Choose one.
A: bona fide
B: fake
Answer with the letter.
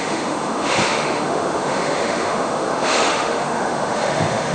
B